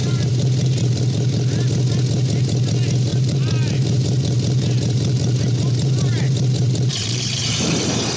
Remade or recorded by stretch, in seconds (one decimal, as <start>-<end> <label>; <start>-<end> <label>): 0.0-1.0 remade; 1.0-3.1 recorded; 3.1-8.2 remade